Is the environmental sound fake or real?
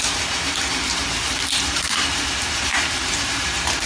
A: fake